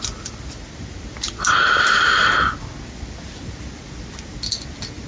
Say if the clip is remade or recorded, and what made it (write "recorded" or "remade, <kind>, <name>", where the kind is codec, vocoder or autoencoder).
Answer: recorded